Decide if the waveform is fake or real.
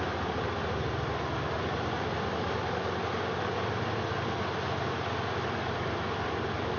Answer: real